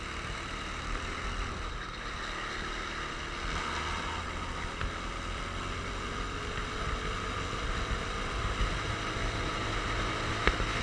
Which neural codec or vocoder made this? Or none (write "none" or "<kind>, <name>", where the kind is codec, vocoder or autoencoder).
none